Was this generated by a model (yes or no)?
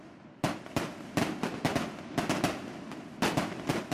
no